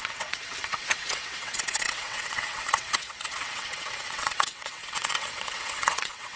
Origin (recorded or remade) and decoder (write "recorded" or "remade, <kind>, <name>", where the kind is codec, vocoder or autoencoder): remade, vocoder, WaveNeXt